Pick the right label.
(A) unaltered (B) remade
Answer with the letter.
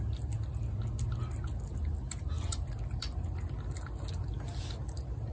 A